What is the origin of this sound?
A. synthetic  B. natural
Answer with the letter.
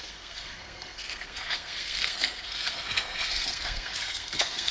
A